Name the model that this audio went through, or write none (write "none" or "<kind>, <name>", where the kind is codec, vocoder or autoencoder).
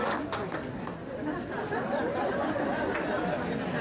none